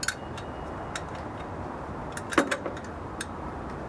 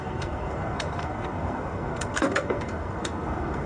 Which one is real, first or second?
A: first